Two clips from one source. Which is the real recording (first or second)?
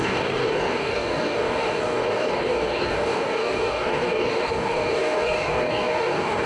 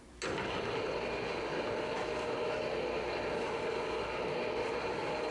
second